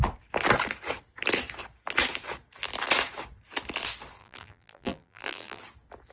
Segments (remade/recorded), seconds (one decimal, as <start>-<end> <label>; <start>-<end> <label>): 0.0-4.2 recorded; 4.2-5.6 remade; 5.6-6.1 recorded